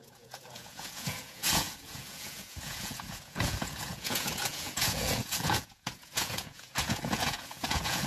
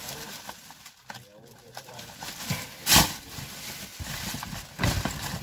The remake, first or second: first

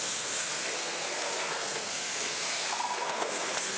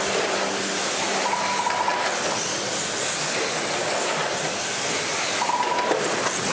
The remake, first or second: first